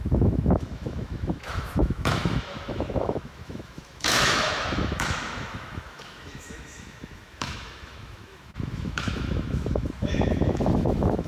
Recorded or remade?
remade